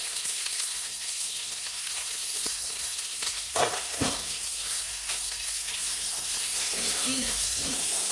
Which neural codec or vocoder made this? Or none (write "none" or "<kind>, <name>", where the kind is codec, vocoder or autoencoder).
codec, SNAC